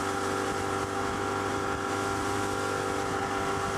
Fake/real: real